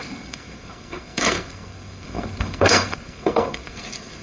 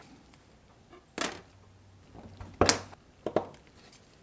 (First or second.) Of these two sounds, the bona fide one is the second